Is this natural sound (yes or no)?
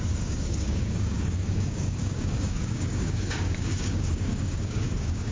no